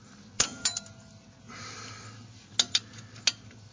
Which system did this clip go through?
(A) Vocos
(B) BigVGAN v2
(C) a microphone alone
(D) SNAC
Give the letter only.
C